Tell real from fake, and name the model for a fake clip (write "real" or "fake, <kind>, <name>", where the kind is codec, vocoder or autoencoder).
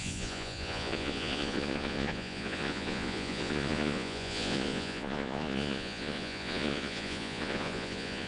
fake, vocoder, Vocos